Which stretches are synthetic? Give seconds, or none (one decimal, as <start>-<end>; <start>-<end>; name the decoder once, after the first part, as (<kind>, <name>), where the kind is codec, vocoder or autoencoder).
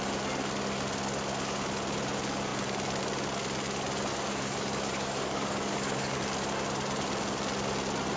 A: 4.1-6.2 (codec, DAC)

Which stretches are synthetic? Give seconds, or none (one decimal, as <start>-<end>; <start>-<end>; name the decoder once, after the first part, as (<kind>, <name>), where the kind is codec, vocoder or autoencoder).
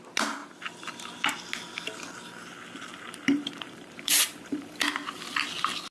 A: 2.9-5.2 (vocoder, BigVGAN v2)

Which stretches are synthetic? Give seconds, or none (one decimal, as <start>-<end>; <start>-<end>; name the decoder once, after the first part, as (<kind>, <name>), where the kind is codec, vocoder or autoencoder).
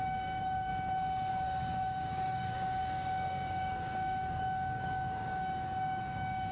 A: 0.0-0.7 (codec, DAC); 1.3-6.5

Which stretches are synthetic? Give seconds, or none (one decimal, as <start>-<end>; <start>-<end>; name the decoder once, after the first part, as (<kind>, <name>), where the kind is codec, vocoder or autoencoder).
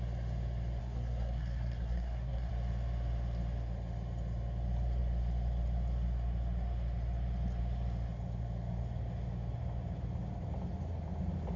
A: 0.8-2.5 (codec, SNAC)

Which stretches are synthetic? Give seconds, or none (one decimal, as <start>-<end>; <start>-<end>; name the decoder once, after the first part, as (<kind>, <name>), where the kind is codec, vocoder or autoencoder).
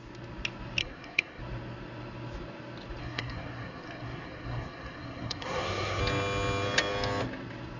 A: 0.8-1.4 (codec, SNAC); 3.0-6.0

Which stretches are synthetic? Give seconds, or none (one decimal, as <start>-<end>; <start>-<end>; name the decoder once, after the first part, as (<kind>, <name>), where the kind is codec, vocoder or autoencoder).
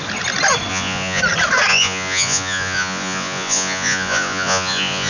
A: 0.7-1.2 (vocoder, Vocos); 1.7-5.1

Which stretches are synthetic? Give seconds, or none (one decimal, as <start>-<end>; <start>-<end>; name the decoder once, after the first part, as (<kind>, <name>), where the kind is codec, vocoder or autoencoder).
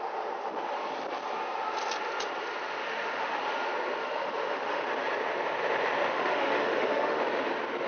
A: 2.8-3.4 (autoencoder, DAC-VAE); 4.0-4.8; 6.1-7.2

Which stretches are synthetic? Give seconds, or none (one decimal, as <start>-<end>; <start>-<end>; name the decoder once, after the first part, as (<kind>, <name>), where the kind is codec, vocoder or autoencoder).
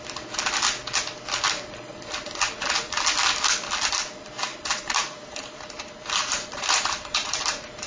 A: 4.5-7.9 (vocoder, BigVGAN v2)